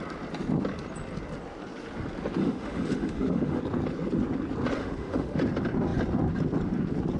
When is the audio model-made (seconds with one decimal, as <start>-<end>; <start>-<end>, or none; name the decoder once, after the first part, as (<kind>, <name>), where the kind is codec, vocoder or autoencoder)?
2.4-3.6 (autoencoder, DAC-VAE); 4.8-5.4